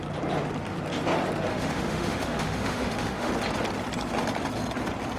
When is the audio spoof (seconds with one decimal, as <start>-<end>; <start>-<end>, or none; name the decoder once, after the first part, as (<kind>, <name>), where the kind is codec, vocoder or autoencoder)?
1.5-3.3 (autoencoder, DAC-VAE)